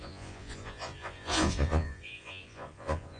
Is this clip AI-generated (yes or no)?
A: yes